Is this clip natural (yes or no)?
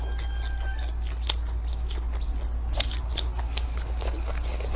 yes